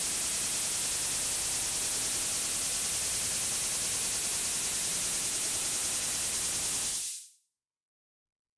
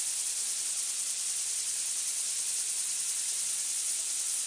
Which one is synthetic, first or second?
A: second